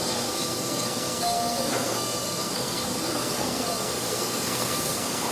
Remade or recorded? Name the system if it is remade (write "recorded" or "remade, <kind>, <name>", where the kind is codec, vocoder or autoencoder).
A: remade, codec, SNAC